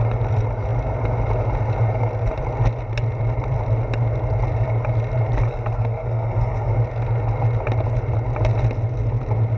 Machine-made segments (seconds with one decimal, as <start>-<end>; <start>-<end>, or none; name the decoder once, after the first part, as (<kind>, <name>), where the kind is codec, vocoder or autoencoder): 5.5-6.7 (codec, SNAC)